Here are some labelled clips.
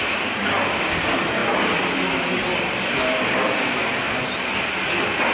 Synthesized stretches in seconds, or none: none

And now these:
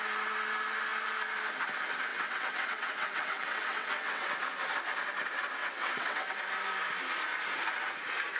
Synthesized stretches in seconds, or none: 2.1-4.3 (vocoder, WaveNeXt); 5.6-6.4

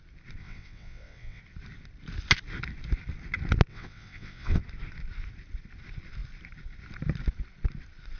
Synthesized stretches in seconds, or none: 0.4-1.4 (vocoder, WaveNeXt); 3.7-4.6

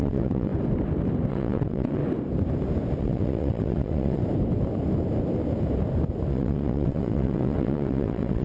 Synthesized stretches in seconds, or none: 0.0-0.5 (vocoder, WaveNeXt); 1.3-2.0; 3.0-4.2; 6.3-8.4

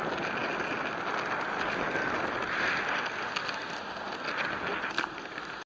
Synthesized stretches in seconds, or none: none